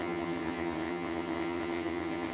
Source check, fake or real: fake